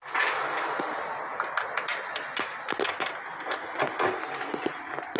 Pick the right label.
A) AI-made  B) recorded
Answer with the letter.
B